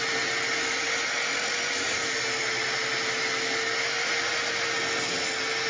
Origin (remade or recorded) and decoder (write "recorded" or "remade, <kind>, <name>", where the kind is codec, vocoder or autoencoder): recorded